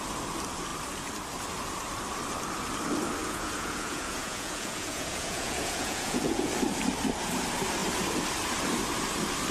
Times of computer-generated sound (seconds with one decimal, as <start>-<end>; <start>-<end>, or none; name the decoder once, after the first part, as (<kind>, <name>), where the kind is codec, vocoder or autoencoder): 3.2-6.5 (vocoder, Vocos)